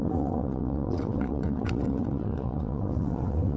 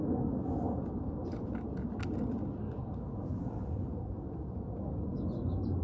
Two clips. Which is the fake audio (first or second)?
first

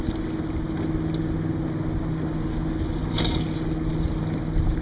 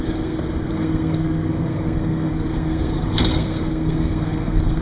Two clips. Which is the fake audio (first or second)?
second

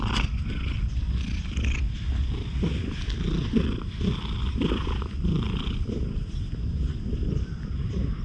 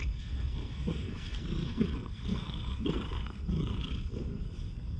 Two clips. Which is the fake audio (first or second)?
second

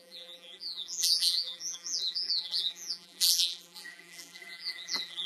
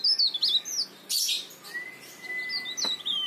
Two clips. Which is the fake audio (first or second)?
first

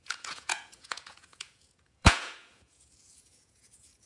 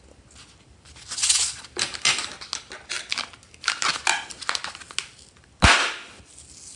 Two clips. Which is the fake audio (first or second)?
first